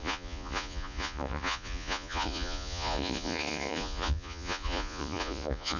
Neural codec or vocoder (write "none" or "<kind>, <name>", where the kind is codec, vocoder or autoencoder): vocoder, Vocos